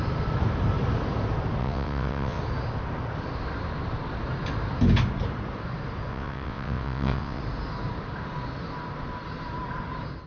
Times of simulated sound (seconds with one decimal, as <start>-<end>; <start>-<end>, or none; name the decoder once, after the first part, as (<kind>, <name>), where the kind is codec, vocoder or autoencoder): 1.6-2.4 (vocoder, WaveNeXt); 6.1-7.4